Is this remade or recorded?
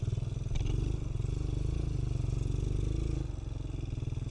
recorded